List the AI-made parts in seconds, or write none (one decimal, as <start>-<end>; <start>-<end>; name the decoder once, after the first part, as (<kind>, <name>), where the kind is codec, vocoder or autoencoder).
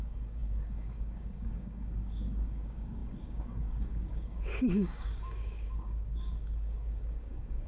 0.0-7.7 (codec, DAC)